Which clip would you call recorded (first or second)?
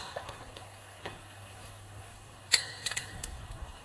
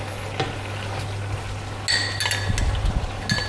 second